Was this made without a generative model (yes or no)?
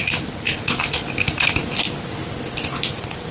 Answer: yes